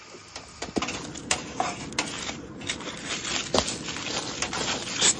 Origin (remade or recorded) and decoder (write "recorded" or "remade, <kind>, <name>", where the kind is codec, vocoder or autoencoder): recorded